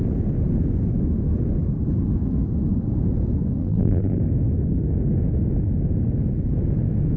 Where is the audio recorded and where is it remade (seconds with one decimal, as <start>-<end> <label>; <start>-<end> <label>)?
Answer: 0.0-3.6 recorded; 3.6-4.2 remade; 4.2-7.2 recorded